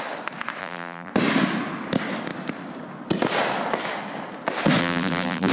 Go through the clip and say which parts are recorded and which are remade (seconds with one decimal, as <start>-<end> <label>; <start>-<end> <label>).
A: 0.0-0.6 recorded; 0.6-1.1 remade; 1.1-4.8 recorded; 4.8-5.5 remade